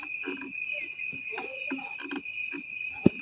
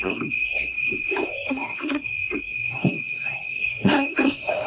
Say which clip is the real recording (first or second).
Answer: first